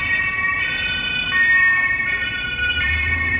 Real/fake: fake